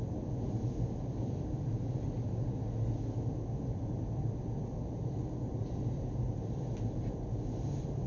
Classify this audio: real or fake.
real